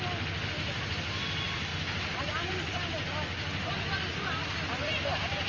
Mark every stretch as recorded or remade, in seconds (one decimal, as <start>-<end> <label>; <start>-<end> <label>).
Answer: 0.0-5.5 recorded